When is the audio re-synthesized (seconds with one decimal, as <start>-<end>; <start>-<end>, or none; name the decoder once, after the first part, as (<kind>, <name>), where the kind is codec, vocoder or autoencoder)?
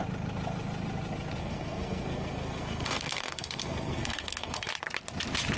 1.4-4.7 (codec, SNAC)